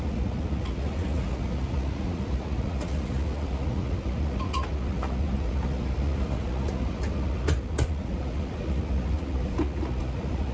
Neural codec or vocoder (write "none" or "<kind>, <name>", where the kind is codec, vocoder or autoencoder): vocoder, Vocos